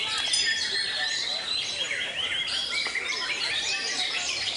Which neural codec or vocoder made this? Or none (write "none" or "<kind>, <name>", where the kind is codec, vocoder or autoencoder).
vocoder, BigVGAN v2